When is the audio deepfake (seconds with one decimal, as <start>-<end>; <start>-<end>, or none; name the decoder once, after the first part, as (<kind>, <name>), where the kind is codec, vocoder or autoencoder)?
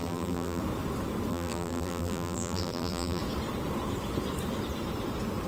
0.0-0.6 (vocoder, BigVGAN v2); 1.3-3.2